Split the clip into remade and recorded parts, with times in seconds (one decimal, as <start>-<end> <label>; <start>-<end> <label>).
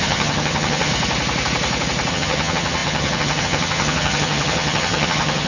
0.0-0.9 remade; 0.9-2.1 recorded; 2.1-5.5 remade